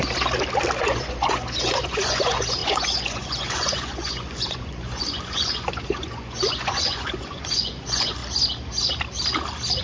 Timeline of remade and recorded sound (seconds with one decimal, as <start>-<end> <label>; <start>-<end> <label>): 0.0-0.8 recorded; 0.8-8.2 remade; 8.2-9.8 recorded